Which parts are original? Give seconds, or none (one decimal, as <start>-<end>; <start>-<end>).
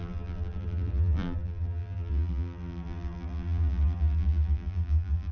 none